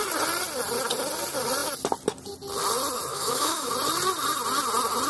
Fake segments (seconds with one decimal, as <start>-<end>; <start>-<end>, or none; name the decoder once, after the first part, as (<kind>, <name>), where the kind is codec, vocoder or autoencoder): 3.1-3.7 (autoencoder, DAC-VAE)